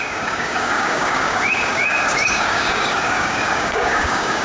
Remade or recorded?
remade